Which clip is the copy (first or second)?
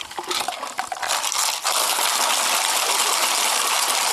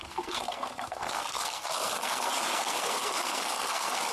second